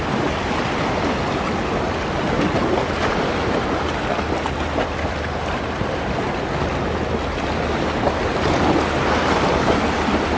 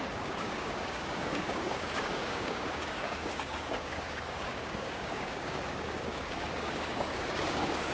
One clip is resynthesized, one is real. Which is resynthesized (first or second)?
second